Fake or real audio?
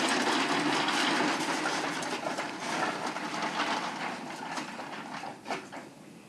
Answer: real